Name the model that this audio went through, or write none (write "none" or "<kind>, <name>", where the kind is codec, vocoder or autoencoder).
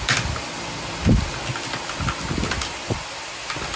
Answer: none